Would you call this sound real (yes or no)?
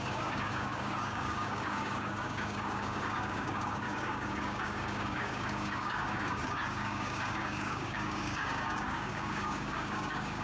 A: no